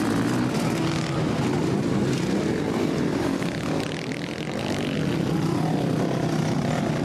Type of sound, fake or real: real